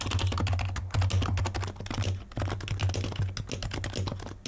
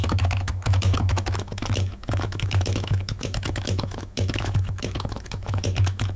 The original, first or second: first